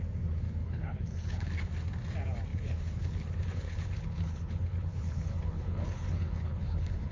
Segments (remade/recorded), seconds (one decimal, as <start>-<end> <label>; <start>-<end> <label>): 0.0-0.6 recorded; 0.6-1.5 remade; 1.5-2.5 recorded; 2.5-7.1 remade